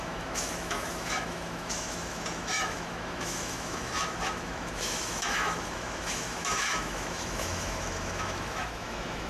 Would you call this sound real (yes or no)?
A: no